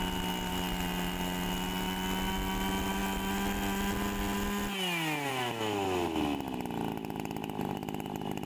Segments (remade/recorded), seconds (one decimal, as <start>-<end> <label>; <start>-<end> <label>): 0.0-8.5 recorded